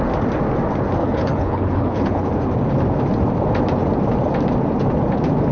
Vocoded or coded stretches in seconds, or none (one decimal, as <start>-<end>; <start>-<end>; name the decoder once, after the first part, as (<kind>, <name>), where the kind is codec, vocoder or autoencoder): 1.0-2.3 (codec, HILCodec)